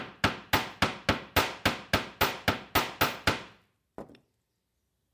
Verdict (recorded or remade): recorded